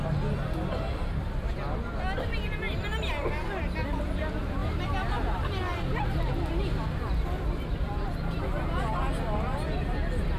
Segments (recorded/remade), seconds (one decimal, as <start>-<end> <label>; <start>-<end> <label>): 0.0-10.4 recorded